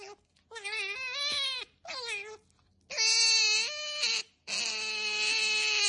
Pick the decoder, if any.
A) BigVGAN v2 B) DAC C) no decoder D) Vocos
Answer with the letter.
C